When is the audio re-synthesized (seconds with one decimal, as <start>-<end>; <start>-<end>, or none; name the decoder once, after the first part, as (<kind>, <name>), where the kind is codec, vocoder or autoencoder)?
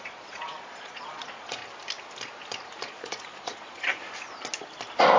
0.0-1.6 (vocoder, Vocos); 2.9-3.9